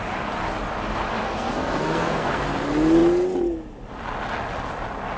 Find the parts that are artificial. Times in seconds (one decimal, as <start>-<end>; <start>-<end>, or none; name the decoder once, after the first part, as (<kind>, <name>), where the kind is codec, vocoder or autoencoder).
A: 1.2-2.6 (codec, SNAC)

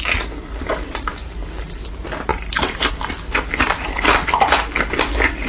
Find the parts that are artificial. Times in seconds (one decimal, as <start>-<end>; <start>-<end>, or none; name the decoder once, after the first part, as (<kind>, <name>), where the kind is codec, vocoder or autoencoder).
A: none

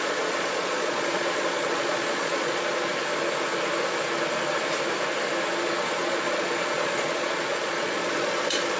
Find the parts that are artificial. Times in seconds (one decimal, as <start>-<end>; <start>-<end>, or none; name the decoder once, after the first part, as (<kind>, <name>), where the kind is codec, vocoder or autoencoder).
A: 0.0-2.9 (vocoder, Vocos); 5.6-8.8

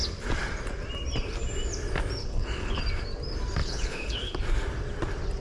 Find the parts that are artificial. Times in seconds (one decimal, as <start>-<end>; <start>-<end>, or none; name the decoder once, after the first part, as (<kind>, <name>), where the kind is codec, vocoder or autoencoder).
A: 2.2-2.8 (codec, HILCodec); 3.6-4.4

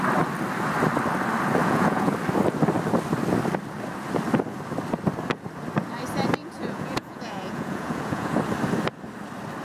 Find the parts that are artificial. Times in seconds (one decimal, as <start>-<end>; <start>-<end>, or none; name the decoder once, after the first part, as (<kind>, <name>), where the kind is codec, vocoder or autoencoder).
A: 1.6-2.1 (vocoder, Vocos); 6.4-8.4

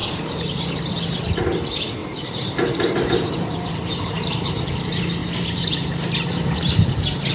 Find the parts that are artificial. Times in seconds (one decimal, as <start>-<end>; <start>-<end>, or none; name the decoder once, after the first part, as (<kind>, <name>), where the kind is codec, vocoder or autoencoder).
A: 0.0-0.6 (vocoder, BigVGAN v2); 2.0-4.5